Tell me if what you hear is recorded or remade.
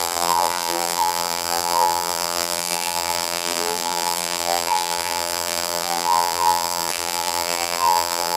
remade